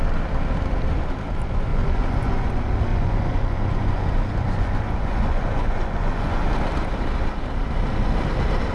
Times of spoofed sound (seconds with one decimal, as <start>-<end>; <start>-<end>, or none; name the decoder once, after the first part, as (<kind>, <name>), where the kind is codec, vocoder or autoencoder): 1.7-2.5 (vocoder, Vocos); 2.9-6.4

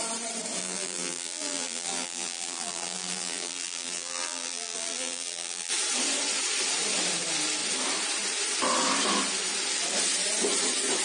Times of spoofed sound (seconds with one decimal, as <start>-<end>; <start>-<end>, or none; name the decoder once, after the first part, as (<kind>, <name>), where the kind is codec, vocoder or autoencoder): 0.6-5.7 (vocoder, BigVGAN v2)